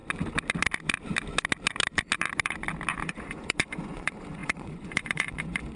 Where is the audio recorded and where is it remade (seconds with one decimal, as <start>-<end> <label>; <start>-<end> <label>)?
0.0-3.1 recorded; 3.1-5.8 remade